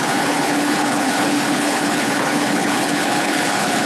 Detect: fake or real fake